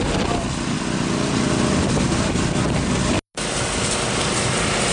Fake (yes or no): no